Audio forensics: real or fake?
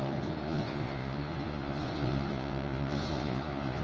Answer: fake